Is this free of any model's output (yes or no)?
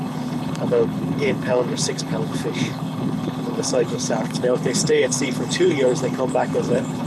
no